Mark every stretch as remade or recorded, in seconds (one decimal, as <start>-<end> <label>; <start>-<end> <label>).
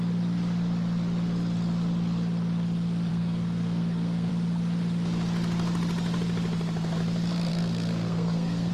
0.0-3.1 recorded; 3.1-4.3 remade; 4.3-7.5 recorded; 7.5-8.7 remade